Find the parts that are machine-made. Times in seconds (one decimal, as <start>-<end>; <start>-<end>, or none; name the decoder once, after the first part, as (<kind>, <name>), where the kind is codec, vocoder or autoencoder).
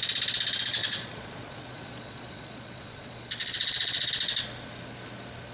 0.8-4.1 (vocoder, Vocos)